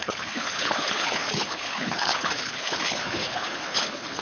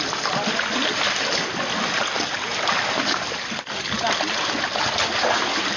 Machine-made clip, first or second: first